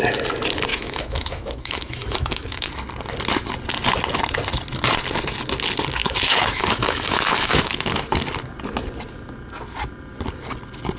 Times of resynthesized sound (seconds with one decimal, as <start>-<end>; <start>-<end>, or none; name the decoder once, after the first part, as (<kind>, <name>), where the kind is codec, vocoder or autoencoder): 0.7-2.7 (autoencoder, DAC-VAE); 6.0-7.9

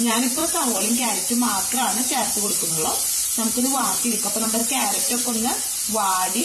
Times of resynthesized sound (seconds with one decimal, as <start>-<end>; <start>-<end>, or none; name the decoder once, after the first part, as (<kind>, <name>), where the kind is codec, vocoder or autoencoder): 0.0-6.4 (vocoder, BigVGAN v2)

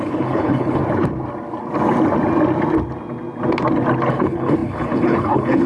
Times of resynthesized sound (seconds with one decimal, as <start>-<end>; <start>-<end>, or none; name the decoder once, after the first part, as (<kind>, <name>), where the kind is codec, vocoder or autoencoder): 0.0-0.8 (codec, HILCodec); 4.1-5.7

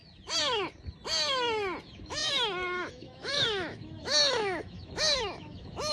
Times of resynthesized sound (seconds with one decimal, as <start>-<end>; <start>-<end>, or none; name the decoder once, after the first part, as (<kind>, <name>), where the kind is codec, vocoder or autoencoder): 1.8-5.9 (autoencoder, DAC-VAE)

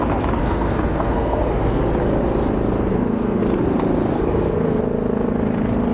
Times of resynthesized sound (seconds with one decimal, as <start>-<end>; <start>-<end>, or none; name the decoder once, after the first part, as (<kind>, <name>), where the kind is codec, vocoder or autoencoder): 0.4-1.8 (codec, SNAC); 2.9-3.4; 4.1-4.8

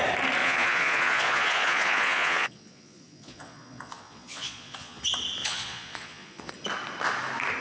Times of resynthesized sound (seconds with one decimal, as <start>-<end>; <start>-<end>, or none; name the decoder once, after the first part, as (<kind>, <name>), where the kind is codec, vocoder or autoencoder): 0.4-5.0 (vocoder, Vocos); 5.4-6.5